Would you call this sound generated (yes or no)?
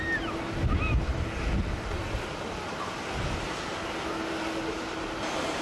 no